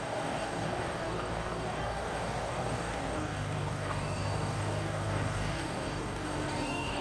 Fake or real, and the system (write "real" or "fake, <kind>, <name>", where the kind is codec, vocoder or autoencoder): fake, codec, DAC